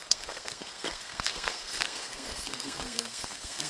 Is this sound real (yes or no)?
no